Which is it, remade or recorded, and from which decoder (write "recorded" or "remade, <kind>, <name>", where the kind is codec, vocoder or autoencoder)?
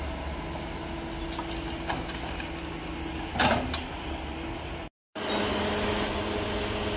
recorded